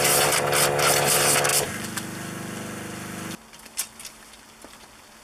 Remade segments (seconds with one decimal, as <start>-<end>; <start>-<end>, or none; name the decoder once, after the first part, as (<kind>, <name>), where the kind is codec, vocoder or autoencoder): none